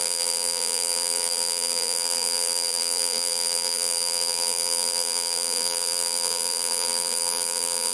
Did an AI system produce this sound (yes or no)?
yes